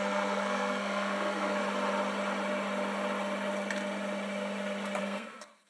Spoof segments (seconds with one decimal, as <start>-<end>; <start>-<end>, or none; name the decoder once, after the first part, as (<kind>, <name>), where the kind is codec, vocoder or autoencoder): 0.0-1.6 (codec, SNAC); 5.0-5.7